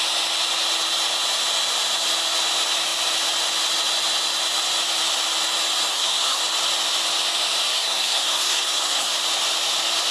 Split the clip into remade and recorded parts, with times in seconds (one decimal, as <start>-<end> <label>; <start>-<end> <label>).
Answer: 0.0-5.9 recorded; 5.9-6.4 remade; 6.4-7.7 recorded; 7.7-9.1 remade; 9.1-10.1 recorded